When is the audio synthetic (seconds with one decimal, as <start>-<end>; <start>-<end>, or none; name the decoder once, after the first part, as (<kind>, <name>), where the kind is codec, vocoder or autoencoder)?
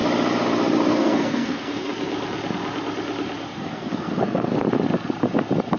0.9-1.9 (codec, SNAC); 3.6-4.5